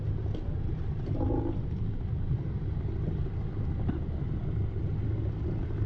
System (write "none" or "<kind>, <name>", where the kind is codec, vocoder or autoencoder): none